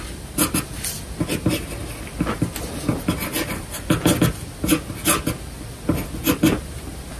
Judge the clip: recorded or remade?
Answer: recorded